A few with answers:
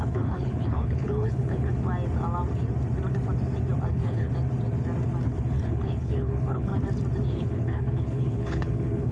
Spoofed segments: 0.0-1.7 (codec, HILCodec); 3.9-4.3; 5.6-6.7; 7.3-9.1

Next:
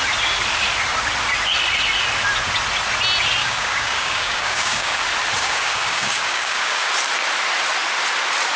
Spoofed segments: 3.4-5.0 (codec, DAC); 5.4-6.9

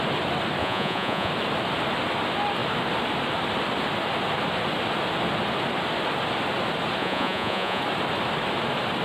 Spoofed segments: 0.6-1.3 (vocoder, Vocos); 7.0-7.8

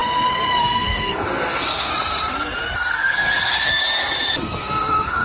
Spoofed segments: 0.6-1.9 (codec, SNAC); 2.9-3.8; 4.4-5.2

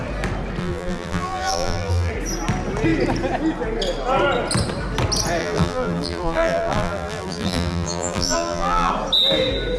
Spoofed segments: 0.6-2.1 (vocoder, BigVGAN v2); 5.4-8.9